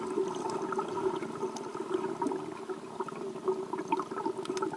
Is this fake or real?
real